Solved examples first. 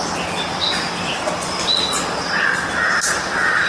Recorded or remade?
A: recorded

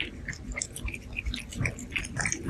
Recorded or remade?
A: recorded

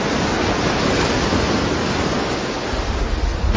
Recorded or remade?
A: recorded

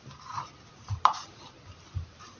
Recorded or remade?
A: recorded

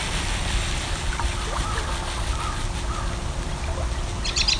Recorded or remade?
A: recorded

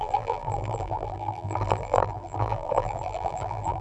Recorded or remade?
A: remade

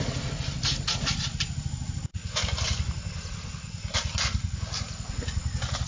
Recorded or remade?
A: recorded